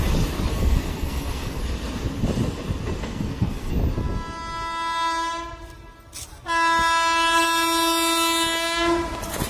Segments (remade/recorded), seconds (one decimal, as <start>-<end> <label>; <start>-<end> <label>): 0.0-0.5 recorded; 0.5-1.6 remade; 1.6-3.0 recorded; 3.0-3.7 remade; 3.7-9.5 recorded